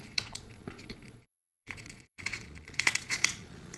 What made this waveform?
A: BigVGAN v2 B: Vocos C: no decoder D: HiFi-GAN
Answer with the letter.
B